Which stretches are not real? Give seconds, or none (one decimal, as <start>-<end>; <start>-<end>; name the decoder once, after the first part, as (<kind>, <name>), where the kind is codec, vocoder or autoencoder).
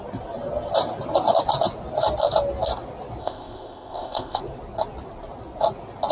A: 3.2-4.4 (codec, ZipCodec)